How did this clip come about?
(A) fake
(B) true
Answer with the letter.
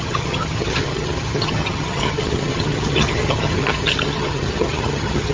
A